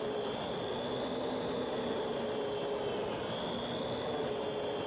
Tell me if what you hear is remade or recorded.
recorded